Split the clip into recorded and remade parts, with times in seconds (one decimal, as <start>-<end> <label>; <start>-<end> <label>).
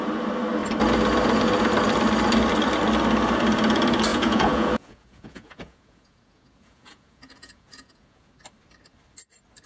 0.0-4.1 recorded; 4.1-8.3 remade; 8.3-9.7 recorded